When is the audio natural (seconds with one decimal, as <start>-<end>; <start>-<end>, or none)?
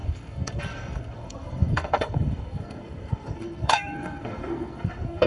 none